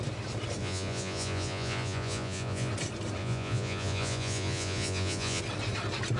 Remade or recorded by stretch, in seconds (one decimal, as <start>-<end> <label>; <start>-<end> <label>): 0.0-0.6 recorded; 0.6-2.7 remade; 2.7-3.2 recorded; 3.2-5.4 remade; 5.4-6.2 recorded